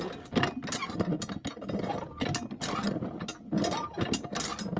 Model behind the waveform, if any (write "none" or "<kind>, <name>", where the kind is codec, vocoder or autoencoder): none